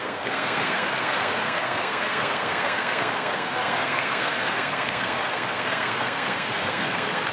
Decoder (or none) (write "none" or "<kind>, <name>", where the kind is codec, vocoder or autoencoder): codec, SNAC